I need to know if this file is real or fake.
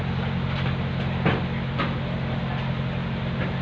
real